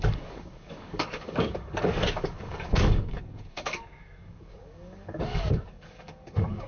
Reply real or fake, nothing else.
fake